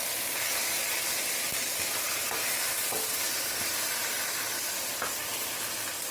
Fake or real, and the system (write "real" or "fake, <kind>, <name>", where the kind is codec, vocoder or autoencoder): real